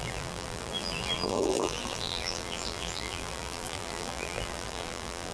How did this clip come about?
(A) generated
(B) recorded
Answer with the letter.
A